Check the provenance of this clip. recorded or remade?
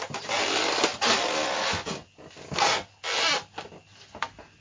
recorded